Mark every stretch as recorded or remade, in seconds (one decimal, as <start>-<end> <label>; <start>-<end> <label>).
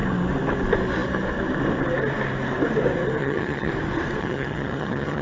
0.0-3.2 recorded; 3.2-3.7 remade; 3.7-4.2 recorded; 4.2-5.2 remade